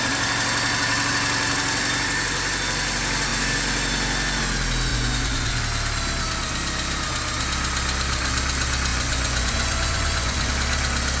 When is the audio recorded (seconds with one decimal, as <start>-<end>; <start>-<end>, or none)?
0.0-4.9; 5.6-8.9; 10.5-11.2